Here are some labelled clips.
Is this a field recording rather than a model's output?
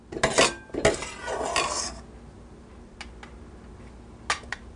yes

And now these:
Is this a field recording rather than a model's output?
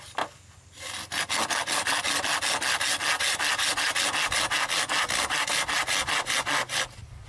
yes